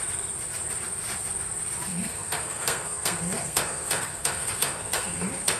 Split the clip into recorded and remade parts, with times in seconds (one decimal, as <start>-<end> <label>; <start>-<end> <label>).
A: 0.0-1.9 recorded; 1.9-5.6 remade